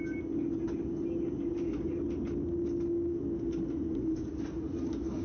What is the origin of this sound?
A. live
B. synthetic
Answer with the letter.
A